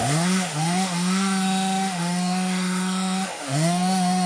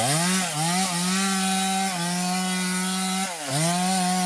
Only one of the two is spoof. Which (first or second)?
first